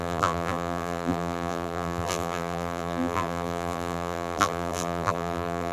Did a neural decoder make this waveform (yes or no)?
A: yes